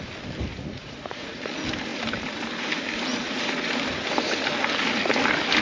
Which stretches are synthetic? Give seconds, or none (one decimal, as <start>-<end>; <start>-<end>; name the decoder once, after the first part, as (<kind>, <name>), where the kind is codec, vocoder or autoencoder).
0.5-1.4 (vocoder, Vocos); 3.1-3.7